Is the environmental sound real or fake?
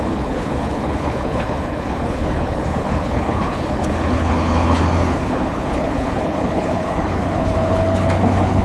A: fake